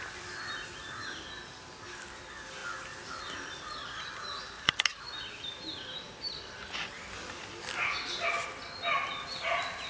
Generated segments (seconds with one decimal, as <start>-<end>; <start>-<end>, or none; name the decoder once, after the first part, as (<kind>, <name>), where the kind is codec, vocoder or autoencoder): none